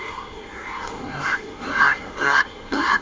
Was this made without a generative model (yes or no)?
no